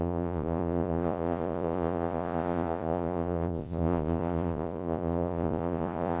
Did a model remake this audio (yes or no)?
yes